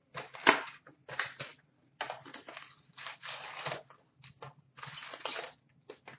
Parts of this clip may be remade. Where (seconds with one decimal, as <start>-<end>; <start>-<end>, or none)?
none